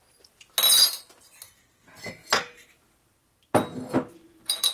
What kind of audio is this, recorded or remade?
recorded